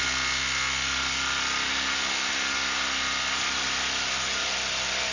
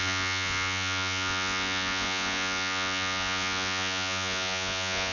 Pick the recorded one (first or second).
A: first